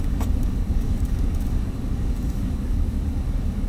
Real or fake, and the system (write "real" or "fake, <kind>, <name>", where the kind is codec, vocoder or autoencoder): fake, codec, DAC